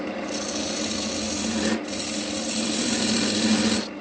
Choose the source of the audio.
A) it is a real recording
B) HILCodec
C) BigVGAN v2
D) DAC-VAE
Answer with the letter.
A